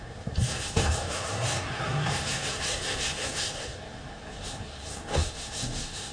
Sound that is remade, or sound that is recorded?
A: remade